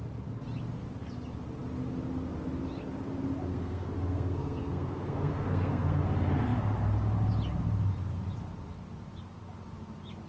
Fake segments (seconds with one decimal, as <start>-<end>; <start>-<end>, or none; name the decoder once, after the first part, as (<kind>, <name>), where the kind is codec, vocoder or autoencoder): 3.5-6.0 (codec, SNAC)